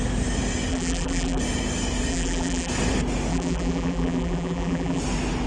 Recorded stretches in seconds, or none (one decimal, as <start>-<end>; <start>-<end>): 0.0-0.7; 1.4-2.1; 2.7-3.3; 5.0-5.5